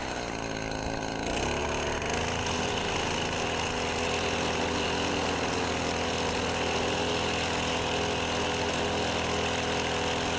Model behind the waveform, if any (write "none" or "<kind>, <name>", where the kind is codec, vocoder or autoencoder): none